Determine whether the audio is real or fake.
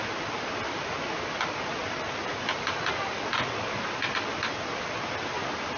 real